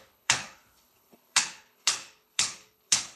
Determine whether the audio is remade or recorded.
remade